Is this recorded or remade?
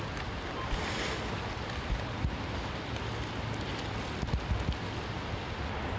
recorded